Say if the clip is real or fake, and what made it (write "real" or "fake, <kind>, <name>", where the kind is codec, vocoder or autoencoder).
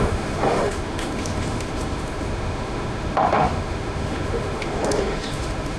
fake, autoencoder, DAC-VAE